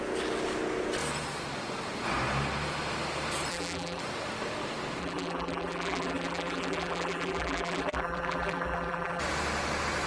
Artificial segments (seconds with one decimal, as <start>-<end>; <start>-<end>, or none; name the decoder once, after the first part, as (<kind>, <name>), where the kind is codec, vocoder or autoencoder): 3.5-4.0 (vocoder, BigVGAN v2); 5.0-9.2